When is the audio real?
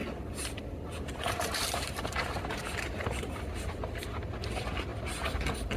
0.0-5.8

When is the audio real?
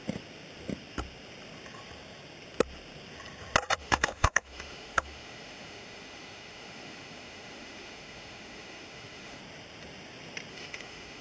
0.0-3.8; 9.4-10.5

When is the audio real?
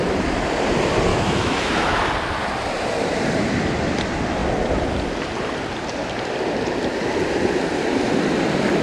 0.0-1.1; 2.0-8.8